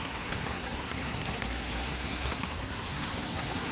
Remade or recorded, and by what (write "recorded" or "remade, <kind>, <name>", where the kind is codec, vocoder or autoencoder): remade, codec, SNAC